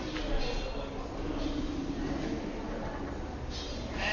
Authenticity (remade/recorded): recorded